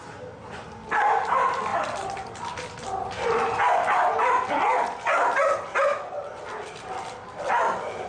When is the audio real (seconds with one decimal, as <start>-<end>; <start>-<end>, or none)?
0.0-8.1